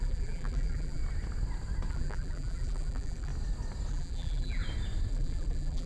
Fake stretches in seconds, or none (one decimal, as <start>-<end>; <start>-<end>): 0.0-1.0; 1.9-3.3; 3.9-4.6; 5.1-5.9